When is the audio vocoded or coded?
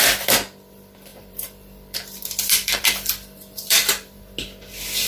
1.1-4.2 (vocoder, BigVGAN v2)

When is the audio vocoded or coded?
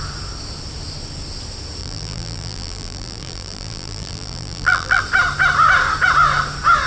1.8-5.0 (vocoder, BigVGAN v2)